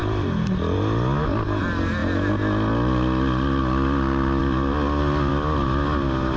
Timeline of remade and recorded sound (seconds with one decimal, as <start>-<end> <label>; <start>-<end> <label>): 0.0-6.4 recorded